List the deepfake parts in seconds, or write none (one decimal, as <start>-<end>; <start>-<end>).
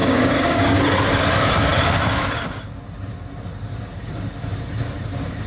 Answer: 0.0-0.8